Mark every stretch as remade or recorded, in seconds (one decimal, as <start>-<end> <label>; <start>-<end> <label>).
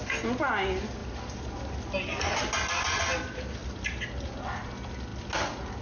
0.0-5.8 recorded